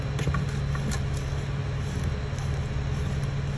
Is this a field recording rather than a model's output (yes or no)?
yes